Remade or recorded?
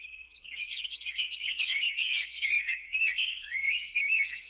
remade